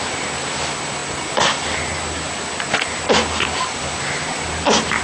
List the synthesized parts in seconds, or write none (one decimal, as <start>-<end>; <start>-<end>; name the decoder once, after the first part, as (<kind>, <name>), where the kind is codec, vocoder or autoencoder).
none